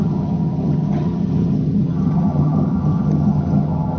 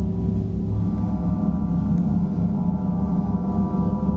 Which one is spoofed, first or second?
first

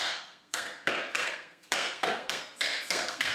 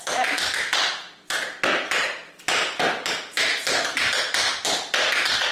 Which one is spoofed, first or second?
first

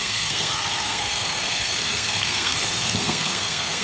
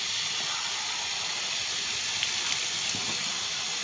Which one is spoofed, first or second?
first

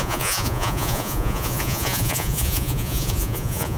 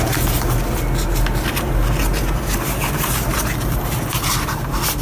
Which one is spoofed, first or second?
first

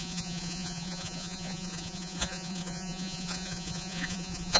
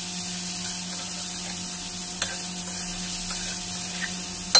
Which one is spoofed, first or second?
first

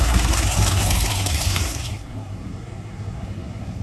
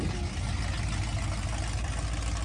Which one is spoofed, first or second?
first